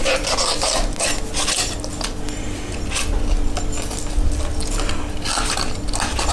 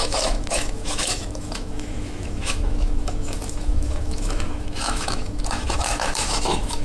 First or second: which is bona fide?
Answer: first